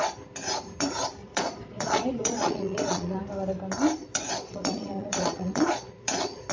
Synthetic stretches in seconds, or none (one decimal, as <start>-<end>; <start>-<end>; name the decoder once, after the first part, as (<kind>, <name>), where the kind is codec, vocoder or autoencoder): 1.2-3.2 (vocoder, Vocos); 4.0-6.5